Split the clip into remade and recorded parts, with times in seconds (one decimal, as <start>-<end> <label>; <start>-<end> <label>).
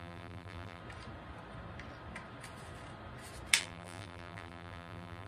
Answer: 0.0-0.8 remade; 0.8-3.6 recorded; 3.6-5.3 remade